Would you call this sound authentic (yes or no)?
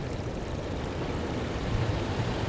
no